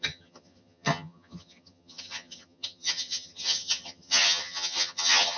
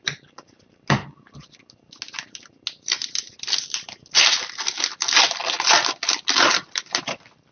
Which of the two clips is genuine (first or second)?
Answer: second